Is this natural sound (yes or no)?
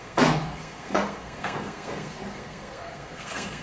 no